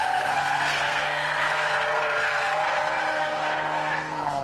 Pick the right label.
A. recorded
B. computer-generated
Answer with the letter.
B